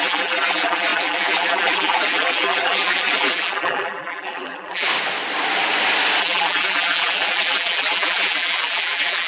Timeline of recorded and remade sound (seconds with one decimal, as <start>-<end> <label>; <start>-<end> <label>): 0.0-4.9 remade; 4.9-6.2 recorded; 6.2-9.3 remade